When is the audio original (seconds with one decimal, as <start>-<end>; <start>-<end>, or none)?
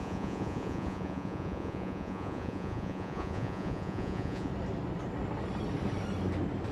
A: 4.5-6.7